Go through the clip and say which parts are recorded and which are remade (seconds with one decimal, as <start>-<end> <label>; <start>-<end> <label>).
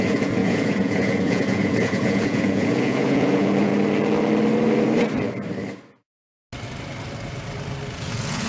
0.0-3.7 remade; 3.7-7.9 recorded; 7.9-8.5 remade